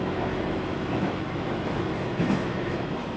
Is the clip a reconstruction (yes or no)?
yes